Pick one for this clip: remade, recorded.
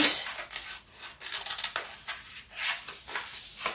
recorded